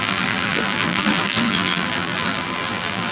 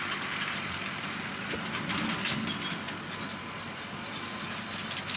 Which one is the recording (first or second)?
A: second